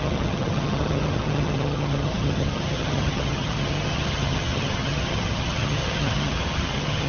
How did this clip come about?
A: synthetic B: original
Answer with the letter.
A